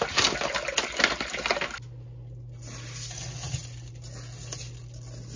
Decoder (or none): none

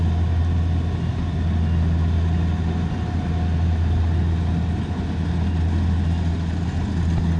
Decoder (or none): none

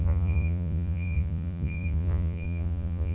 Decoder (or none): vocoder, Vocos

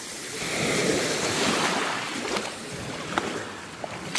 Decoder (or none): none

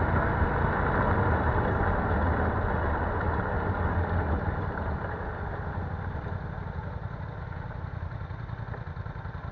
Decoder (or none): none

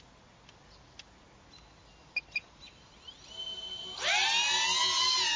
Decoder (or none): none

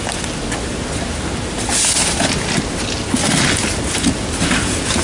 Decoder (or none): none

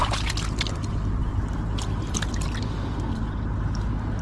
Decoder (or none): none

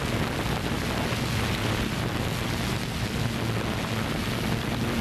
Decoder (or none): none